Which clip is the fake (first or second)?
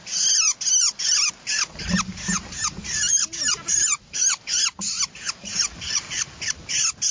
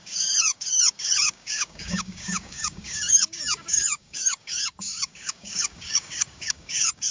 second